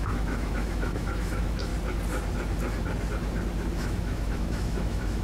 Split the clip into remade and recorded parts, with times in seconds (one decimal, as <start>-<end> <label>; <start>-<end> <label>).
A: 0.0-1.7 remade; 1.7-3.8 recorded; 3.8-5.2 remade